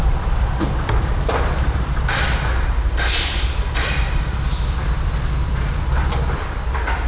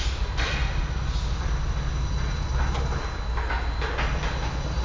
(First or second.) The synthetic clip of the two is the first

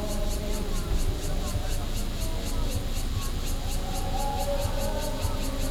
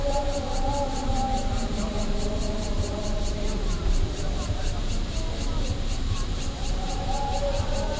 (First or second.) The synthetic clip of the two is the second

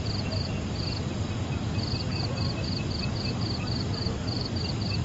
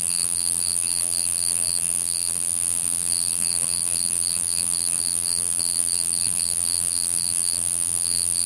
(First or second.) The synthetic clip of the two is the second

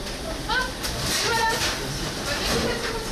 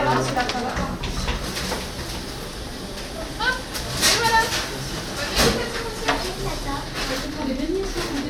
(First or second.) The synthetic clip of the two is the first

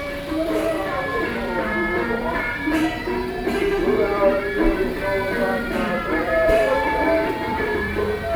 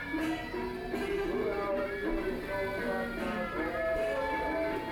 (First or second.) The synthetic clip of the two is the first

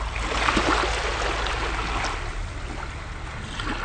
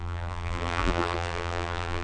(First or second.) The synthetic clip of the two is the second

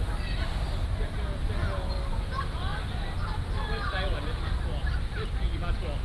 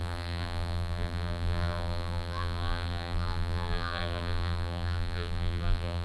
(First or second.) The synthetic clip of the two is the second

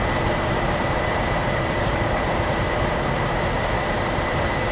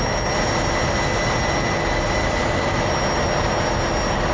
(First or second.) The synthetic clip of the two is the first